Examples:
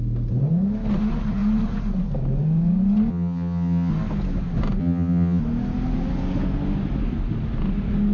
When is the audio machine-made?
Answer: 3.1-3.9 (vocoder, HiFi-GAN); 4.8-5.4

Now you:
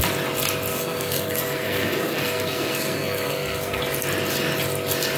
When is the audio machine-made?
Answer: 0.7-3.8 (codec, SNAC)

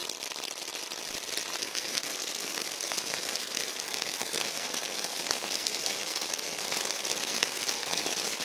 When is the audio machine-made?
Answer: 1.6-8.4 (codec, SNAC)

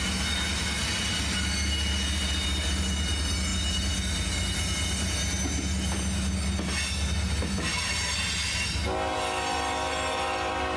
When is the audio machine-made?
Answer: none

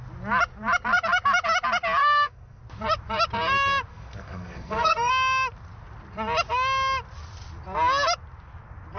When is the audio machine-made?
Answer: 2.0-2.6 (codec, SNAC); 3.9-5.1

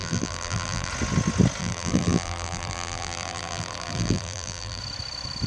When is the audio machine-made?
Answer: 0.0-0.9 (vocoder, BigVGAN v2); 1.6-4.8

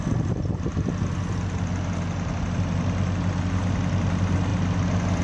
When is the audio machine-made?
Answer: none